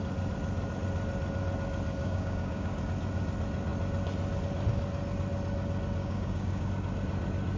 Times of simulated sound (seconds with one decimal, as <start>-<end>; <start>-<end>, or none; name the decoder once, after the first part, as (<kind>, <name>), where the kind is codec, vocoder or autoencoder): 2.0-2.8 (codec, DAC); 6.0-6.7